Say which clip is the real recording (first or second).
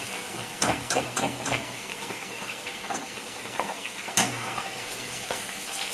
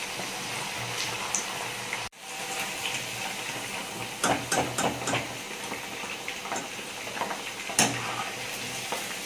second